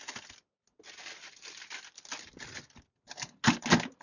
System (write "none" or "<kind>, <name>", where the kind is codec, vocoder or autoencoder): none